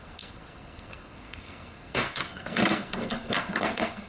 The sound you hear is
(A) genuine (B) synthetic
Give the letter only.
B